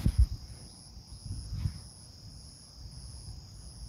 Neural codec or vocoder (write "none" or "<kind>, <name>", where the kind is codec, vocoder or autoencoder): none